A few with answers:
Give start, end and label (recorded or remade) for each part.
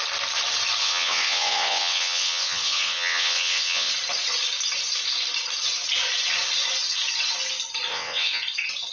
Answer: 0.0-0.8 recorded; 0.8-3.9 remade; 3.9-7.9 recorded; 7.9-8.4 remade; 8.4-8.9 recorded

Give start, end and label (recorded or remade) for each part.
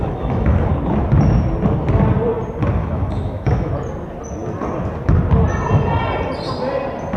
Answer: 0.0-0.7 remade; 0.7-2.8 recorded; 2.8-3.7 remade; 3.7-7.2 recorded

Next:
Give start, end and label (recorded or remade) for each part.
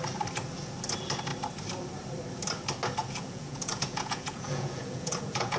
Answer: 0.0-3.0 recorded; 3.0-5.6 remade